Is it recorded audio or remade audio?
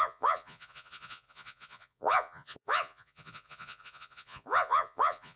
remade